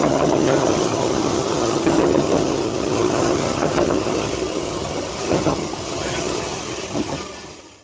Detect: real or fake fake